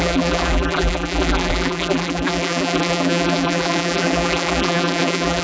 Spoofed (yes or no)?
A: yes